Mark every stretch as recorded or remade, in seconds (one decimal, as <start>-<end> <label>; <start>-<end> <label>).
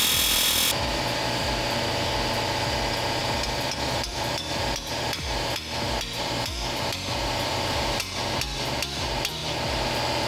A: 0.0-0.9 recorded; 0.9-1.5 remade; 1.5-3.2 recorded; 3.2-8.0 remade; 8.0-10.3 recorded